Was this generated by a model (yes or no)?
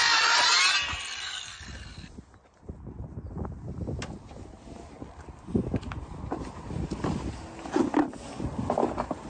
no